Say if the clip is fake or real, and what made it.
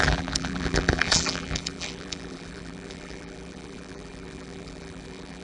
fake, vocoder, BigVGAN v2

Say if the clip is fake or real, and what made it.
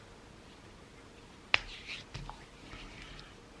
real